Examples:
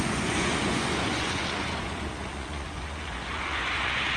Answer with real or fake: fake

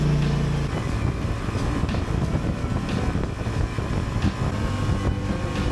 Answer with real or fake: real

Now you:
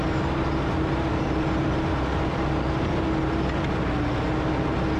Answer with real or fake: real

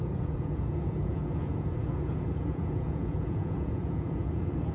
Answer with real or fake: fake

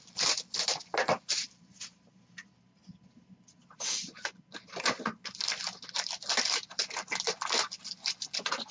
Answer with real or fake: real